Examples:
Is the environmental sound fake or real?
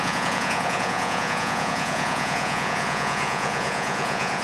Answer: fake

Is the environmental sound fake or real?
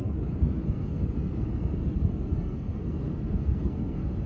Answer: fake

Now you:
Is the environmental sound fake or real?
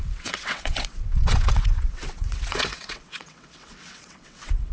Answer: fake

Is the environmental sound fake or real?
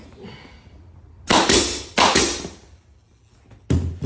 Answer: real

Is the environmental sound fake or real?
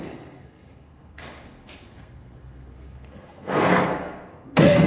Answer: fake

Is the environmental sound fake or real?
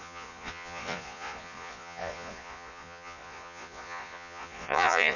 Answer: fake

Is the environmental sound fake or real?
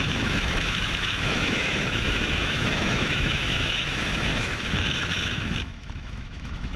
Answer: fake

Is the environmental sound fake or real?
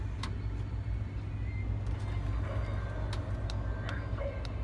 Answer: real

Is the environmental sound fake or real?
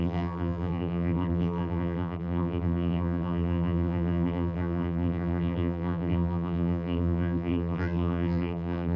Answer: fake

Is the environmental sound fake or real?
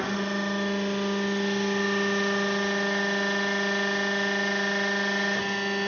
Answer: real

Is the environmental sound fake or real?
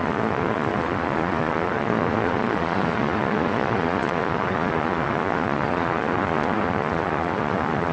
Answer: fake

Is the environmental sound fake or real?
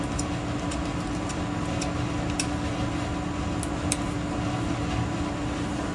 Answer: real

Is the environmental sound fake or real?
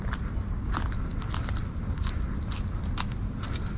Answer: real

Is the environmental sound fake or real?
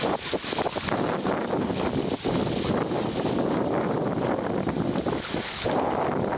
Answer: real